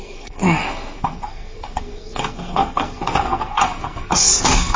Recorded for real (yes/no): no